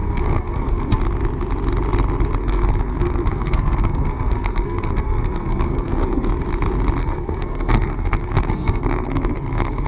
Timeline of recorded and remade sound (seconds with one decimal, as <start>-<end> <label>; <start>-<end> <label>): 0.0-1.0 remade; 1.0-2.4 recorded; 2.4-6.3 remade; 6.3-7.0 recorded; 7.0-9.9 remade